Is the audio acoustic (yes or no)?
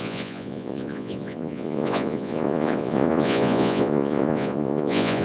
no